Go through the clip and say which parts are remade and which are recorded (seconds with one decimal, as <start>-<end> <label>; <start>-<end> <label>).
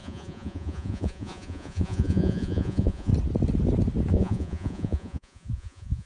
0.0-3.1 remade; 3.1-4.1 recorded; 4.1-6.1 remade